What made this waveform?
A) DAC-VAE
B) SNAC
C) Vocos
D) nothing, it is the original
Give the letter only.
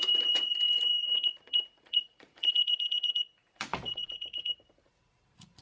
C